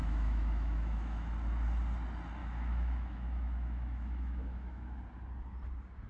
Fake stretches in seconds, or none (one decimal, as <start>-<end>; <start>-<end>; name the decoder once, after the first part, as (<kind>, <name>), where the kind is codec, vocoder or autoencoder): 0.0-1.3 (autoencoder, DAC-VAE); 2.4-5.0